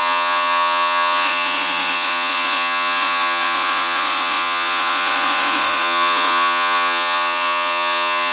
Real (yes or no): no